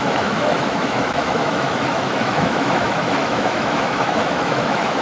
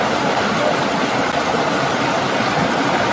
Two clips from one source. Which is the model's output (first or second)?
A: first